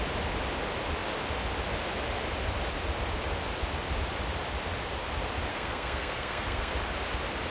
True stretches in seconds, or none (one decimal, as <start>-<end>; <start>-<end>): 0.0-5.5; 6.7-7.5